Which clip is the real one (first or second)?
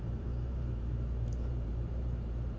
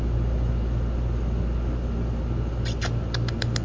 second